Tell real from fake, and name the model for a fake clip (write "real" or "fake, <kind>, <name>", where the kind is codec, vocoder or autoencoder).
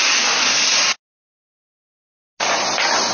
real